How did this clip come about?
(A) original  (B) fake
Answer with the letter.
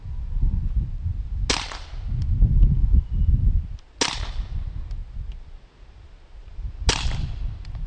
A